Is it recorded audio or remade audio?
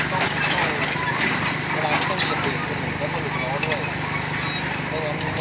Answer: recorded